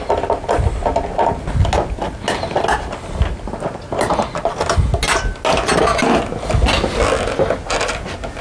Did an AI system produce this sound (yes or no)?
no